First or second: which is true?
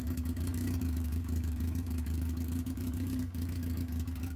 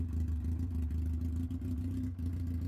second